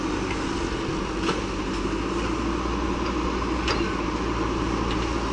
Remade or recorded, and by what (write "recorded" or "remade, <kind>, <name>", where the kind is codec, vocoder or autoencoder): recorded